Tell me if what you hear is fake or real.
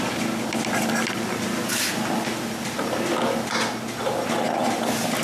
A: real